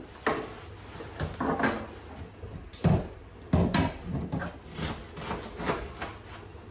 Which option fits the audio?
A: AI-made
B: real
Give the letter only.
B